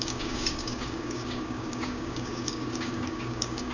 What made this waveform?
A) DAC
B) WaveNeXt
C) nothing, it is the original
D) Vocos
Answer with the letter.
A